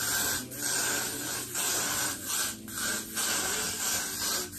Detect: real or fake real